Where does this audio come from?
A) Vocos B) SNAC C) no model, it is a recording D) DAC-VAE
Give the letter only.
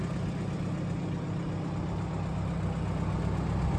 C